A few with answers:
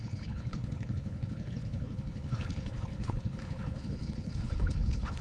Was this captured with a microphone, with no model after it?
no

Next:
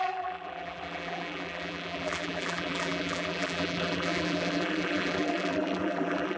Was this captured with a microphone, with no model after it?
no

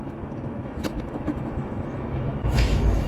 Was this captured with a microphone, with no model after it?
no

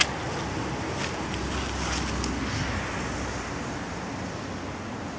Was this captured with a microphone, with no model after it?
yes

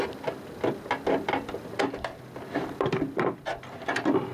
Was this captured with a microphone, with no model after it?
yes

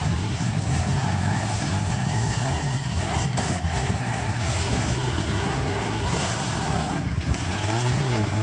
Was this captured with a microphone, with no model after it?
no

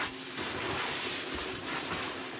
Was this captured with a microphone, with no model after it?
yes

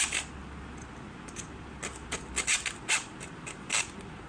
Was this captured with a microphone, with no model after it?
yes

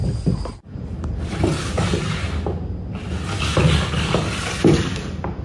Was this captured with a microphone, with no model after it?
yes